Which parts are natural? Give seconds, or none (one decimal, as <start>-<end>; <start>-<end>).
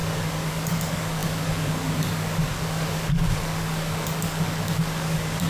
none